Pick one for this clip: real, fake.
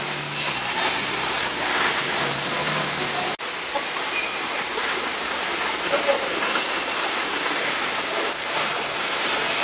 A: real